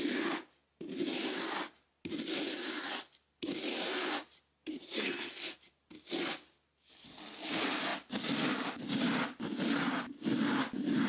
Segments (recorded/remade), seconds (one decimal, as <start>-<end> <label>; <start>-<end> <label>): 0.0-4.7 recorded; 4.7-5.3 remade; 5.3-11.1 recorded